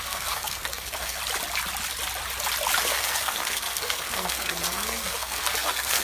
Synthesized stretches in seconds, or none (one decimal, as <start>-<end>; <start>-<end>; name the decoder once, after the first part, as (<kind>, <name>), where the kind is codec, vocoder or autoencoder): 0.0-1.2 (codec, SNAC); 2.8-6.0